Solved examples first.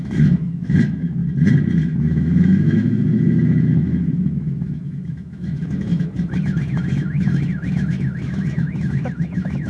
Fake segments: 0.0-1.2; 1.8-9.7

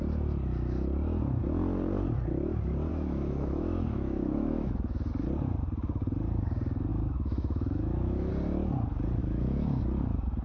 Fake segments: 2.9-5.1; 6.9-8.3; 9.2-9.8

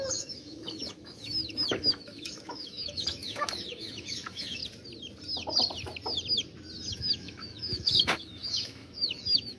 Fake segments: 0.0-4.6; 6.9-9.6

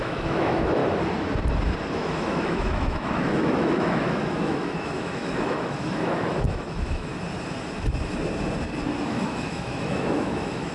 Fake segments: 0.0-0.8; 1.9-7.1; 9.0-10.7

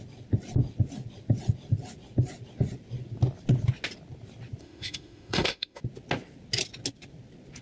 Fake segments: 4.6-5.8

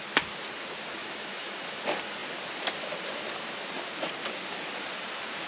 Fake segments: 1.0-1.8

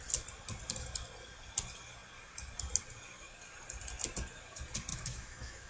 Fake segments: 4.9-5.7